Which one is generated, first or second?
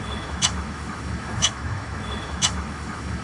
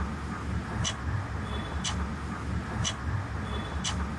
first